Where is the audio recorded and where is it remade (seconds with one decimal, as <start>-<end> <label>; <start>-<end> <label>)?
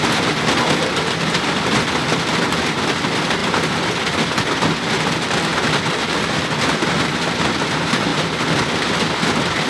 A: 0.0-8.1 recorded; 8.1-8.6 remade; 8.6-9.7 recorded